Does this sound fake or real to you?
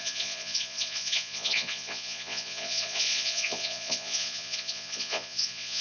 fake